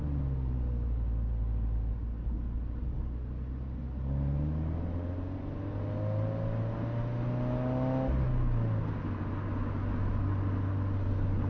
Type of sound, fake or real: real